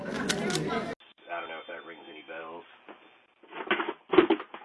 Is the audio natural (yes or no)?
yes